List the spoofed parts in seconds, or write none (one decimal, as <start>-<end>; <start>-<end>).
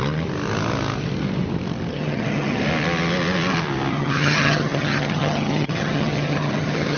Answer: 1.9-2.6; 3.9-7.0